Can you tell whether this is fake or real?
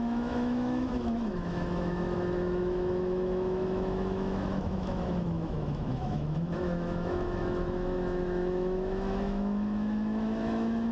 fake